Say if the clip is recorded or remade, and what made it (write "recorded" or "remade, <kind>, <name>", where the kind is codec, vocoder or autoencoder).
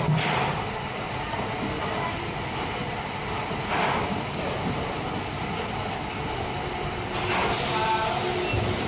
recorded